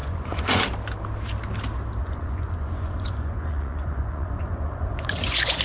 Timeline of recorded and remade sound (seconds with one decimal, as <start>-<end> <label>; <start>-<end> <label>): 0.0-0.6 remade; 0.6-2.0 recorded; 2.0-5.6 remade